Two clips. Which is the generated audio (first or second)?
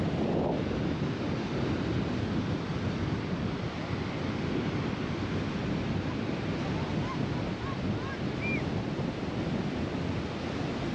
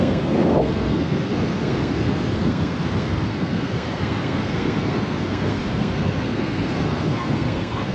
second